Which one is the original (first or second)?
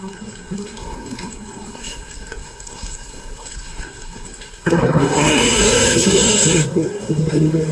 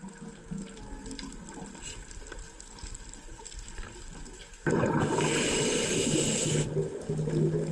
second